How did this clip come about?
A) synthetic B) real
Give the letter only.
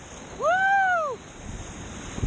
B